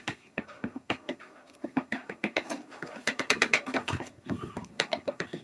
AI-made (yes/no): yes